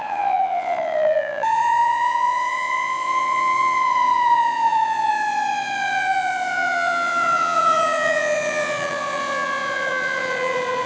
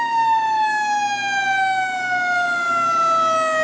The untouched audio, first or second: second